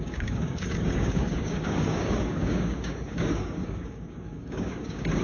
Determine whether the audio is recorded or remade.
remade